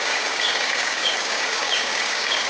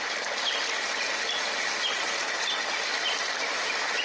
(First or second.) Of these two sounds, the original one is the second